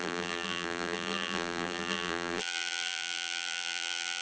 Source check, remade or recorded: remade